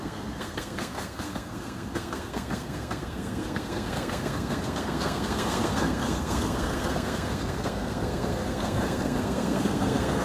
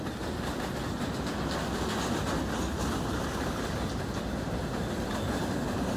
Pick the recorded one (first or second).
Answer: second